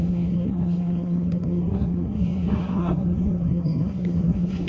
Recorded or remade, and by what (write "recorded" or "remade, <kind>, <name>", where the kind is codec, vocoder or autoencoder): remade, codec, SNAC